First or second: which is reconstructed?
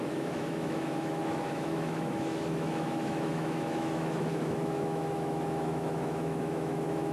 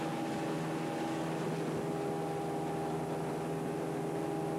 first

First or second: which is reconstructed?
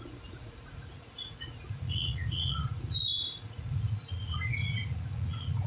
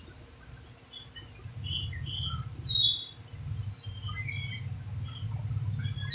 first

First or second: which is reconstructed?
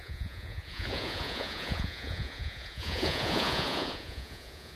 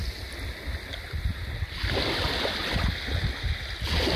first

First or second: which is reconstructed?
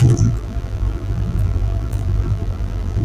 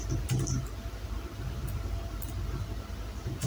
first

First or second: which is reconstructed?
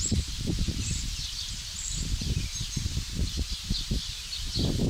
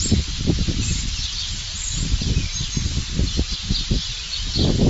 first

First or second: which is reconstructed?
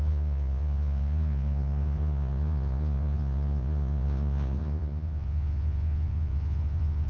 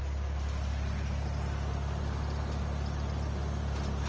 first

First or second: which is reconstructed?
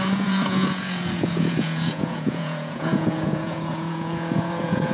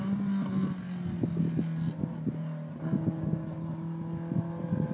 first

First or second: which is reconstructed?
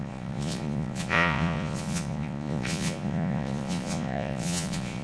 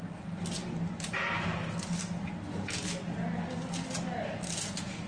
first